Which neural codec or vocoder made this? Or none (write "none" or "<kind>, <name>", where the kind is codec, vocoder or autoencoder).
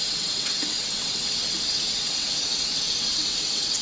vocoder, WaveNeXt